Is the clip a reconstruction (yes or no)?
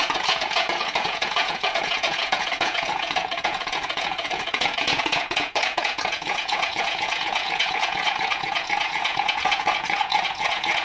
yes